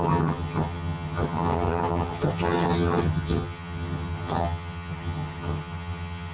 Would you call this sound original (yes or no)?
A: no